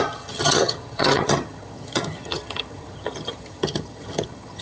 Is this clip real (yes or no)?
no